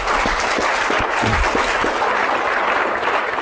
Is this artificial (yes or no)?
no